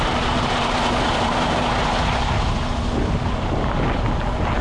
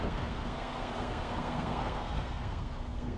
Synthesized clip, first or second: second